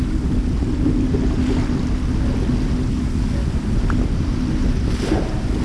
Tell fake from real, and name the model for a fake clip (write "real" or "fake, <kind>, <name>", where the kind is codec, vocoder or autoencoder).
real